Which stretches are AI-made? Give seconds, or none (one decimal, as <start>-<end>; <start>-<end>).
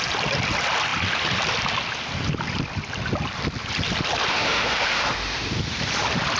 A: 4.3-5.5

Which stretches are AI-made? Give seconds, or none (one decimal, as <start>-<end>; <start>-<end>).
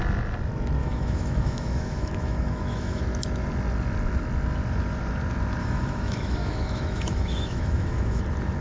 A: 0.8-3.0; 5.6-8.2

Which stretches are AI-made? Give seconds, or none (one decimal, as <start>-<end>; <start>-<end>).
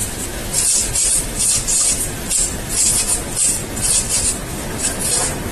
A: none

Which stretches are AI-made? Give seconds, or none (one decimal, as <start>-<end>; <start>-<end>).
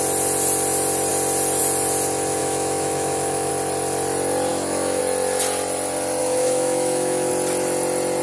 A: 2.4-3.5; 4.5-5.0; 6.2-7.3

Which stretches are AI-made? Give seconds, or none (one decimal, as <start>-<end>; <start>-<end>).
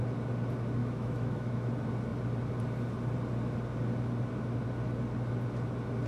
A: 0.8-1.7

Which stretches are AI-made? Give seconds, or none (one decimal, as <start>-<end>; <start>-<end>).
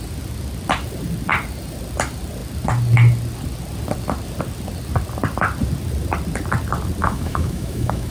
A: 7.0-8.1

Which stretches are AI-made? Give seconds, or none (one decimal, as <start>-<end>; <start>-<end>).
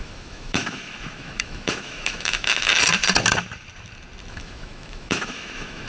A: 0.0-2.7; 4.3-5.9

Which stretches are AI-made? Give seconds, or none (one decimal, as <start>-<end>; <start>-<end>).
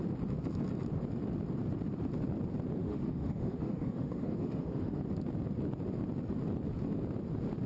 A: 2.8-5.0